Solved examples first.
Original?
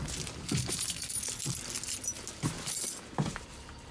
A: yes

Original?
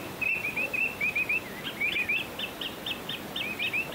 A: yes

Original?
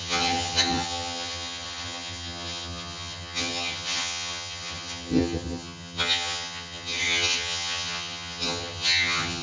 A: no